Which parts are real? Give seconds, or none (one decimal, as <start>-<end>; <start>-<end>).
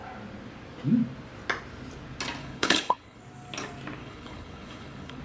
0.0-2.4; 3.2-4.0